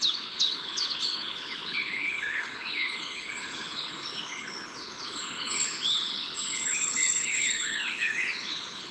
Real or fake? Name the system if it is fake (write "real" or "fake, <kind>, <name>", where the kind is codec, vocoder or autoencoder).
fake, codec, HILCodec